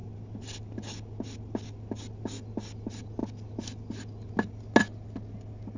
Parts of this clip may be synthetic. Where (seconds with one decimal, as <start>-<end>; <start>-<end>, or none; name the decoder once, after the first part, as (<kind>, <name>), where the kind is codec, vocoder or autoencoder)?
none